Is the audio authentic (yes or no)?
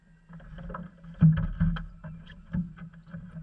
yes